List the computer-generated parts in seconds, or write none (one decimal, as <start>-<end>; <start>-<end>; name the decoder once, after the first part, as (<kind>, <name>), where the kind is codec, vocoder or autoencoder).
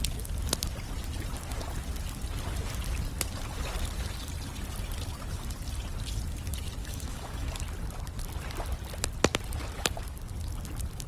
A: 6.8-7.5 (autoencoder, DAC-VAE)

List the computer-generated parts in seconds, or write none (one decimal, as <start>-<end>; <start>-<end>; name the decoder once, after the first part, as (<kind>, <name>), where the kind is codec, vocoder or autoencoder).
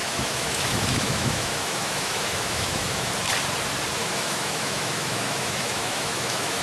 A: 0.0-3.1 (autoencoder, DAC-VAE); 4.0-6.6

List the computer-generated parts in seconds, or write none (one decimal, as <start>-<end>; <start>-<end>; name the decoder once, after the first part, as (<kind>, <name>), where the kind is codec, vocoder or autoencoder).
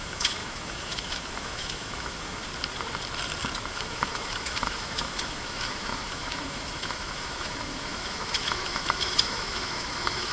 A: 0.0-2.5 (autoencoder, DAC-VAE); 3.7-10.3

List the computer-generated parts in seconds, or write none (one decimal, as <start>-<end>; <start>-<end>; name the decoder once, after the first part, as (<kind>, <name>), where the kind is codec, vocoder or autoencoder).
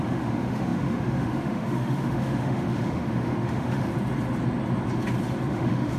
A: 0.0-3.9 (autoencoder, DAC-VAE); 5.5-6.0